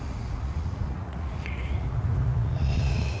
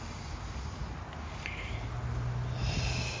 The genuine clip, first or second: second